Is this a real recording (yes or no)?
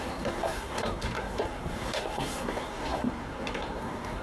no